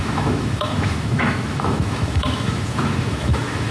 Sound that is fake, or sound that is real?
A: fake